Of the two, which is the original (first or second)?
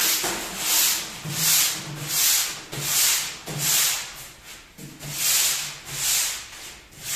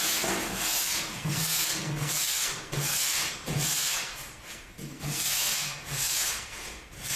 first